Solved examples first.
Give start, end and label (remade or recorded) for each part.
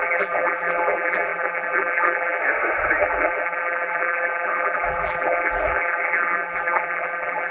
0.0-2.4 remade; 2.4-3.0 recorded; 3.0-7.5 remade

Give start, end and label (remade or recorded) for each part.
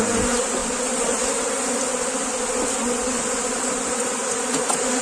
0.0-5.0 recorded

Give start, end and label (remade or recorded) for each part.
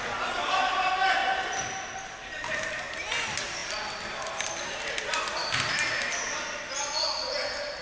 0.0-7.8 recorded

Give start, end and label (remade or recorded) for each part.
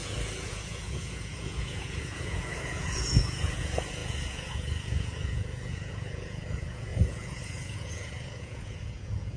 0.0-9.4 remade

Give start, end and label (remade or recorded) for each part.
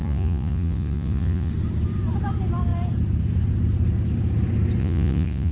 0.0-1.5 remade; 1.5-4.8 recorded; 4.8-5.5 remade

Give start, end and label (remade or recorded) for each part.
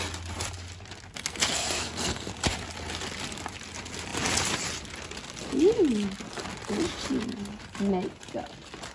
0.0-1.2 recorded; 1.2-2.3 remade; 2.3-8.9 recorded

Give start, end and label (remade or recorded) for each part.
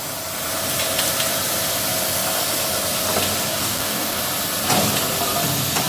0.0-3.5 recorded; 3.5-4.2 remade; 4.2-5.9 recorded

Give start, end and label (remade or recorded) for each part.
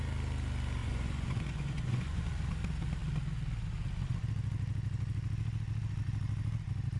0.0-0.8 recorded; 0.8-2.2 remade; 2.2-7.0 recorded